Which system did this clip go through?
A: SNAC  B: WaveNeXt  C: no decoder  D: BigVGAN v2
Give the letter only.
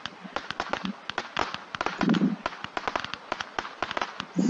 C